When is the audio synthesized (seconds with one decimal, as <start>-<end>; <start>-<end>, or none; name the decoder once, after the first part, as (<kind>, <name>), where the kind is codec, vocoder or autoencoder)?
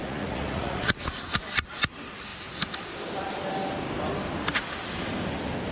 0.0-1.0 (vocoder, Vocos)